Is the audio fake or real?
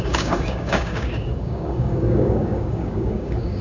fake